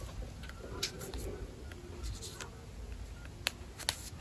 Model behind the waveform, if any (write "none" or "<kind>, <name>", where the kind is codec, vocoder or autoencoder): none